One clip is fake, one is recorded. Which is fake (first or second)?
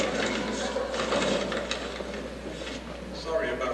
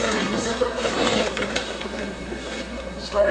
second